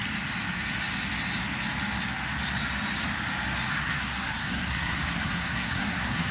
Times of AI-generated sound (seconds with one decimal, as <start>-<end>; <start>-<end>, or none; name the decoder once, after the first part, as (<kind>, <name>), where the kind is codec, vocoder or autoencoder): 3.7-6.3 (codec, SNAC)